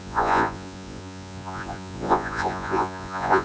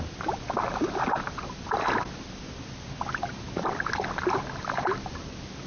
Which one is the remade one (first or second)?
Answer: first